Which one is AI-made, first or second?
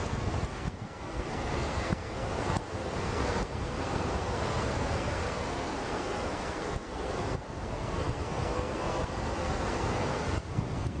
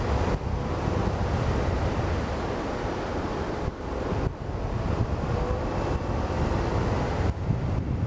first